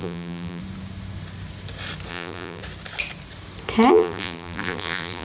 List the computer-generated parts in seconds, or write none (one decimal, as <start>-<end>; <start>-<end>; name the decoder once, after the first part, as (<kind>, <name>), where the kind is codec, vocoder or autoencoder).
0.0-0.6 (vocoder, BigVGAN v2); 2.1-2.6; 3.9-5.2